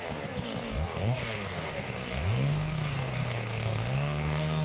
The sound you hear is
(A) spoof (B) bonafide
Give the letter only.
A